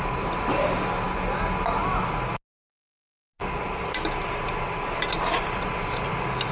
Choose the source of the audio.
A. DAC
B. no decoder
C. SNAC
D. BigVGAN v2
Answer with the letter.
B